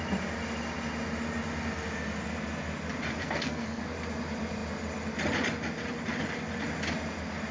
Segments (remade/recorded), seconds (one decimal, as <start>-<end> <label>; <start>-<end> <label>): 0.0-3.2 recorded; 3.2-3.8 remade; 3.8-7.5 recorded

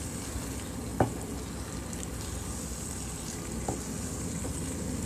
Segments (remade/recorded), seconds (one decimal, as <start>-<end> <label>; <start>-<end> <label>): 0.0-5.1 recorded

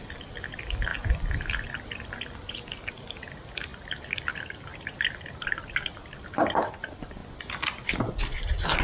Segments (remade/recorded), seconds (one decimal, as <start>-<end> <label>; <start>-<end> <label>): 0.0-8.8 recorded

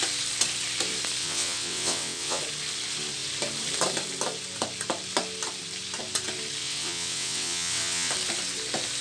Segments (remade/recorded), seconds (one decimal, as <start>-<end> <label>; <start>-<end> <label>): 0.0-1.2 recorded; 1.2-2.4 remade; 2.4-6.6 recorded; 6.6-8.1 remade; 8.1-9.0 recorded